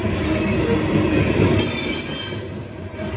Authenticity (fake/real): real